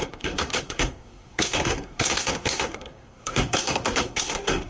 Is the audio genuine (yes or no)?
no